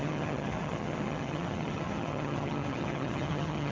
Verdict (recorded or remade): remade